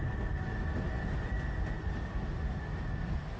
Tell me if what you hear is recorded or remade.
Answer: recorded